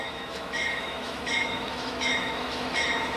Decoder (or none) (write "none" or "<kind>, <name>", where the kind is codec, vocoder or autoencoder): autoencoder, DAC-VAE